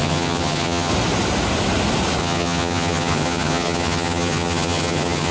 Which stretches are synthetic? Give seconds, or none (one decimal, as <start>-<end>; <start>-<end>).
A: 0.0-0.9; 2.2-5.3